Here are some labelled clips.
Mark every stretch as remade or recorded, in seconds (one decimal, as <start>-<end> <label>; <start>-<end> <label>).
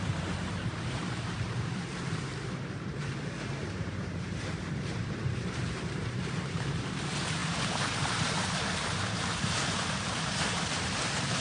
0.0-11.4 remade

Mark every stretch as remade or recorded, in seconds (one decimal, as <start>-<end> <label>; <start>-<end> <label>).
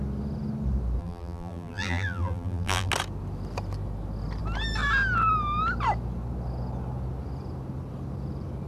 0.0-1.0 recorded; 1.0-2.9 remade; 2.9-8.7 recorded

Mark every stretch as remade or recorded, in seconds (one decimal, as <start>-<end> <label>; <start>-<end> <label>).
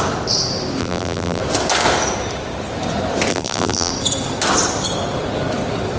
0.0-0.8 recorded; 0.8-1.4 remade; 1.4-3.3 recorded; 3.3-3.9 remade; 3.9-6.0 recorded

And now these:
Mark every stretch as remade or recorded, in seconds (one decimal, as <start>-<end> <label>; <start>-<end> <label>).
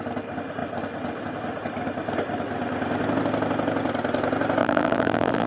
0.0-4.6 recorded; 4.6-5.5 remade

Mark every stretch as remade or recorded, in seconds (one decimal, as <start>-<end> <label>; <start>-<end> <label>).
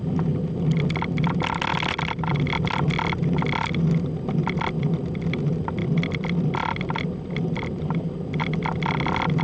0.0-5.8 recorded; 5.8-8.0 remade; 8.0-9.4 recorded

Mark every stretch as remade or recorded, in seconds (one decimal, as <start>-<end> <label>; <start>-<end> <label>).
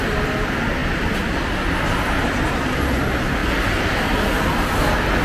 0.0-5.2 recorded